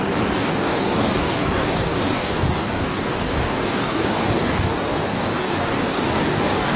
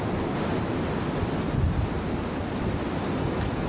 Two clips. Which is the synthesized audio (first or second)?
first